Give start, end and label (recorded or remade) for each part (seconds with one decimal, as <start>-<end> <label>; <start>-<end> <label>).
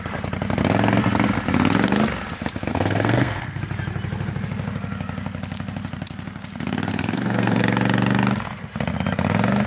0.0-2.7 recorded; 2.7-3.6 remade; 3.6-6.9 recorded; 6.9-7.6 remade; 7.6-9.7 recorded